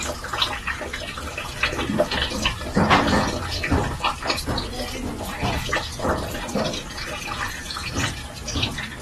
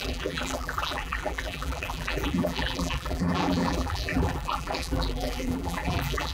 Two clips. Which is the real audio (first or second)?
first